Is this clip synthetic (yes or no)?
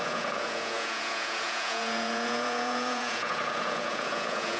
yes